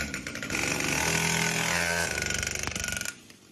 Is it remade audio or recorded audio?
recorded